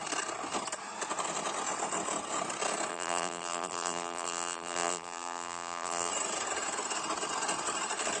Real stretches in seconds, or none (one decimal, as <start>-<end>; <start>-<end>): 0.0-2.9; 6.1-8.2